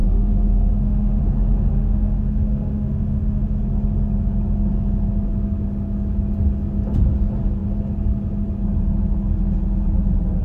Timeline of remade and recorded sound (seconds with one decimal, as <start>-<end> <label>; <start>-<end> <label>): 0.0-1.2 remade; 1.2-1.7 recorded; 1.7-3.6 remade; 3.6-10.4 recorded